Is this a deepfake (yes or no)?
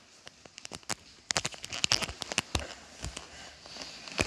no